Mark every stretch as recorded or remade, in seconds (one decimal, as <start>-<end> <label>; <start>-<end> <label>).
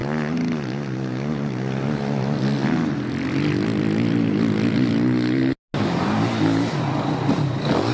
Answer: 0.0-7.9 recorded